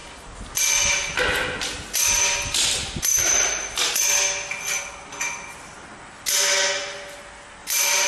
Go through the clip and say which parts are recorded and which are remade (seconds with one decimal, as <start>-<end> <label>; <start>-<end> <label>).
0.0-7.6 recorded; 7.6-8.1 remade